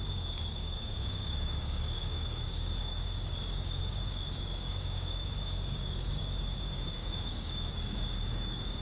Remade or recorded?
remade